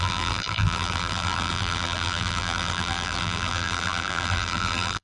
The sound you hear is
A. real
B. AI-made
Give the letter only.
B